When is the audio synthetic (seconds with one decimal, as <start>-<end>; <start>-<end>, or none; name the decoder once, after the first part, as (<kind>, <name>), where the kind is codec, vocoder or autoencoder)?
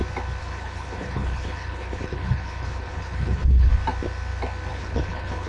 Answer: 0.4-3.7 (codec, HILCodec); 4.7-5.5